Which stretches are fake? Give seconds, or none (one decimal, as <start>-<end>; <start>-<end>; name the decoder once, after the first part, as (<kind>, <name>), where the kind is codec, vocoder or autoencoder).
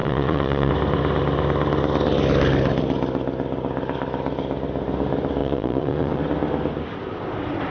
0.0-0.7 (vocoder, Vocos); 5.4-6.2